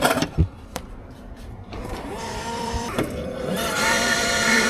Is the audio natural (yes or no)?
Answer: no